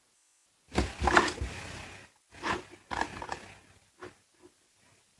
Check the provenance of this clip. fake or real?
real